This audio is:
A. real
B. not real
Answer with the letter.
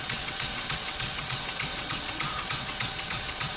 B